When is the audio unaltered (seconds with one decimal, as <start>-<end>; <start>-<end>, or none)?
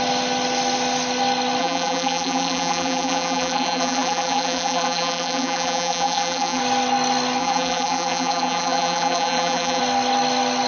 0.0-1.6; 6.6-7.4; 9.8-10.7